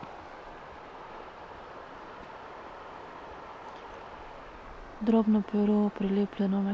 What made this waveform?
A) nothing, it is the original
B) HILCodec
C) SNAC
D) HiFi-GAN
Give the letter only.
A